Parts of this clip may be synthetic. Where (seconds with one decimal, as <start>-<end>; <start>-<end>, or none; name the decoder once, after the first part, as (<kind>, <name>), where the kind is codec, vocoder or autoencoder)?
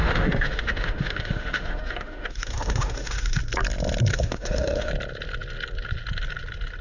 0.0-3.4 (autoencoder, DAC-VAE); 4.1-4.9